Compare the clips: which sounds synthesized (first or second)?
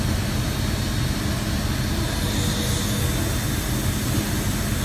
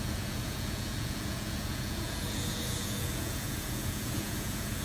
second